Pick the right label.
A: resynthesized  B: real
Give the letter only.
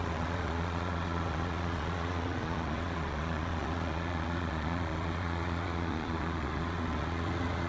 A